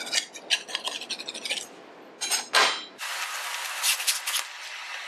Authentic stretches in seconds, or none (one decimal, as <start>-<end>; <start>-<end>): 0.0-5.1